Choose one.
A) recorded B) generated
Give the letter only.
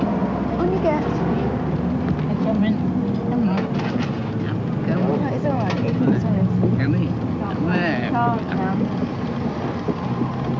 A